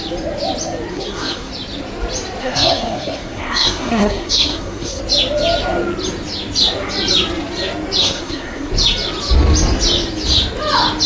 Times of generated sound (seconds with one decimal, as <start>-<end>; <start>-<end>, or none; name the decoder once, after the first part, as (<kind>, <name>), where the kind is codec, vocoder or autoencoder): 0.9-1.5 (codec, SNAC); 2.4-5.0; 8.0-8.7